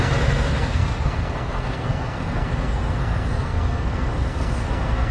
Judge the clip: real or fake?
fake